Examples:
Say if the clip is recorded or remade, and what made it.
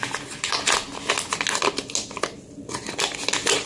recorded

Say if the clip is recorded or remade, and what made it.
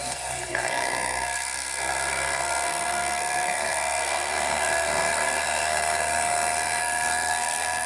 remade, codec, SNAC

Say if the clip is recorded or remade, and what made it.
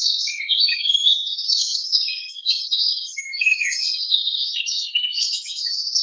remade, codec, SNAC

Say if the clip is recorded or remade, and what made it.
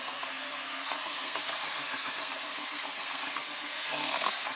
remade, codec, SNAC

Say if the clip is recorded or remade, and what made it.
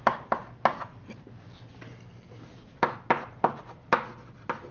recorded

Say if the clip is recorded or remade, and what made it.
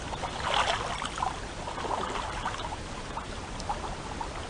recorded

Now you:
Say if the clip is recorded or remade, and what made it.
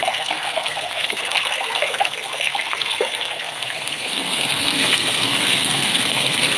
remade, codec, SNAC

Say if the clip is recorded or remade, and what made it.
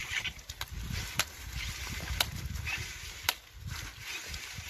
recorded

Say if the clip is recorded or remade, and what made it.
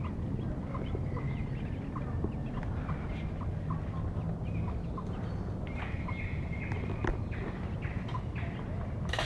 recorded